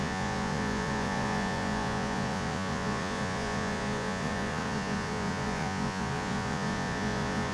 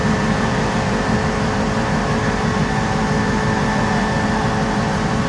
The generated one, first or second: first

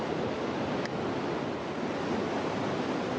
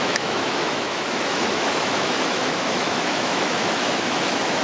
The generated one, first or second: second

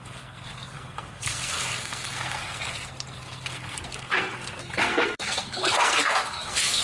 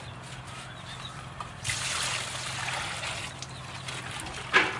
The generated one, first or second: first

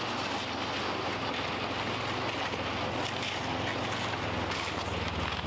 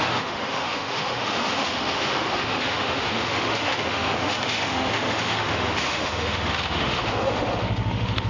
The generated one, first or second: second